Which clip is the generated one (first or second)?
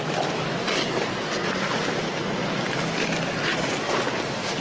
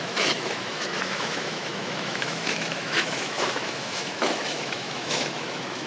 second